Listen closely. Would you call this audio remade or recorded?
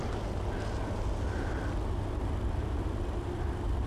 recorded